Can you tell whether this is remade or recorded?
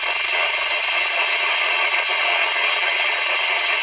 remade